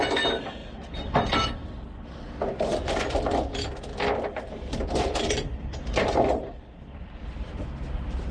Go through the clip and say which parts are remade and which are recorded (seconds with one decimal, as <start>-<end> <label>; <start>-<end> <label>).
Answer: 0.0-0.6 recorded; 0.6-1.7 remade; 1.7-3.9 recorded; 3.9-8.3 remade